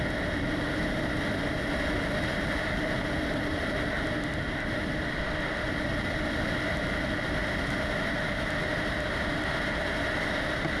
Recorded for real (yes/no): yes